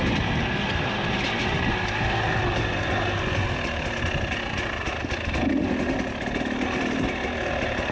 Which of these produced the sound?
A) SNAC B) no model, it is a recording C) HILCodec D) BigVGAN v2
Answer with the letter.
B